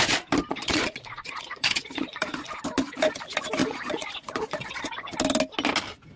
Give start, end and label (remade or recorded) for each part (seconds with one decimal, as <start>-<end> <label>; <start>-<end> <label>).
0.0-0.5 recorded; 0.5-2.5 remade; 2.5-3.6 recorded; 3.6-4.8 remade; 4.8-6.2 recorded